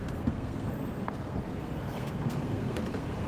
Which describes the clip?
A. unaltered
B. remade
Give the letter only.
B